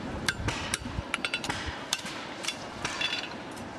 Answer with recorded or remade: remade